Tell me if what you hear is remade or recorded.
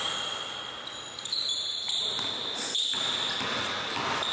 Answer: recorded